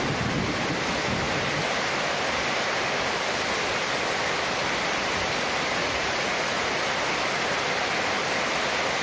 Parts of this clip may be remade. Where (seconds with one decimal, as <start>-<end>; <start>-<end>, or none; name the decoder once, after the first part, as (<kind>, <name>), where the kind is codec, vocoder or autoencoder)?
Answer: 5.8-6.7 (vocoder, Vocos)